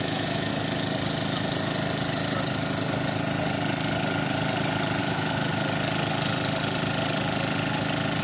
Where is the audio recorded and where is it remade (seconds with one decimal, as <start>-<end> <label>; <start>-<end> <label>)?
0.0-0.5 remade; 0.5-5.0 recorded; 5.0-5.5 remade; 5.5-8.2 recorded